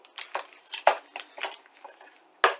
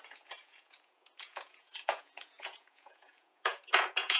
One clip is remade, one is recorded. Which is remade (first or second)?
second